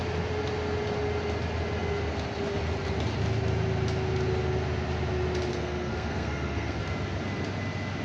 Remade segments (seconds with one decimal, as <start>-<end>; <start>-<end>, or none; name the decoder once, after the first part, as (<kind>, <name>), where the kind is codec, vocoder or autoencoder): 5.5-6.8 (codec, SNAC)